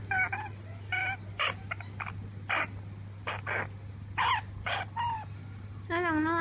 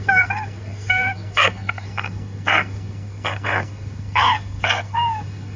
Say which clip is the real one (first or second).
first